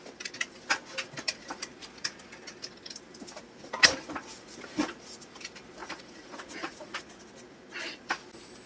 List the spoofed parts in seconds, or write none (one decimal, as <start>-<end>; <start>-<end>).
5.8-7.0